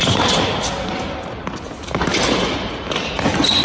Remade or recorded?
recorded